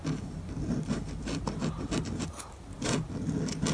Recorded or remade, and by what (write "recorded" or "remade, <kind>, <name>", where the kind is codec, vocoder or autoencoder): recorded